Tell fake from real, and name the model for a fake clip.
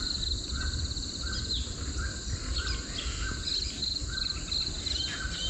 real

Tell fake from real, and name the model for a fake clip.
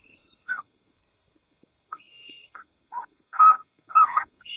fake, codec, SNAC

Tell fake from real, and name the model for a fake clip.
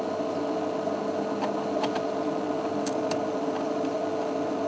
real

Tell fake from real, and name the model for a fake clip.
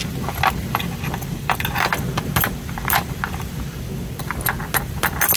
real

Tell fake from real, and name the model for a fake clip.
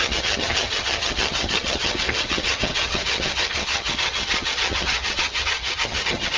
fake, vocoder, HiFi-GAN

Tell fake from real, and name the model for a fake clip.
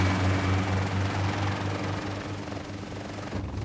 real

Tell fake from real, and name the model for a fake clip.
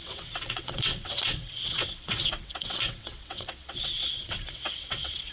fake, vocoder, WaveNeXt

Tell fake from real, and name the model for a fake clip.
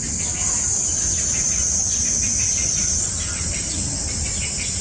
real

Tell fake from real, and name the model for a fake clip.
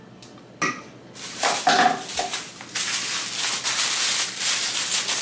real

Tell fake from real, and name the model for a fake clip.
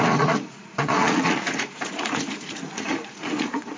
fake, vocoder, Vocos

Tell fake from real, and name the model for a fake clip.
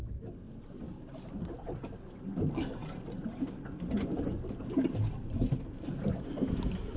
real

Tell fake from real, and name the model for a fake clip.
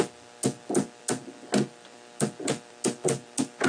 real